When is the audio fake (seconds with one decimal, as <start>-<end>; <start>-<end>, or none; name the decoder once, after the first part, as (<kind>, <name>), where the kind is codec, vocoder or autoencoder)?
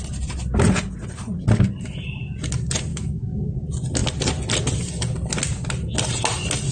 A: 2.9-3.5 (autoencoder, DAC-VAE)